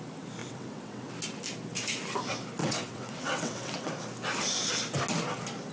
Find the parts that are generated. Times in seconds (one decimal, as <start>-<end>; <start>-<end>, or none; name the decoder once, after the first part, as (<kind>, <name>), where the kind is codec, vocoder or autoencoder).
0.4-1.1 (vocoder, WaveNeXt); 2.6-3.9